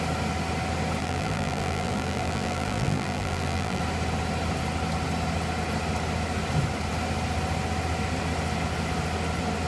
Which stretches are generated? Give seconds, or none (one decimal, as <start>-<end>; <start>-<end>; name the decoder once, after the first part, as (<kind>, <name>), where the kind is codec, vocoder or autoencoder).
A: 1.0-3.8 (vocoder, BigVGAN v2)